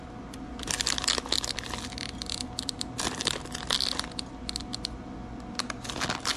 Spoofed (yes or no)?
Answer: no